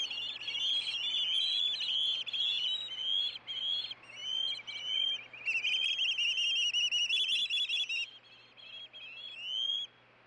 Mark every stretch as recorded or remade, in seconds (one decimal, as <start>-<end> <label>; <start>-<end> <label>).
0.0-10.3 recorded